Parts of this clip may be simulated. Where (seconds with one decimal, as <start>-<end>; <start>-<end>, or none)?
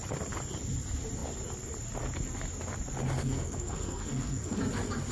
3.2-4.6